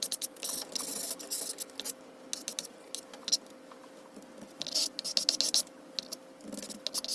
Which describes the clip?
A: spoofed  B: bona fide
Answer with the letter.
B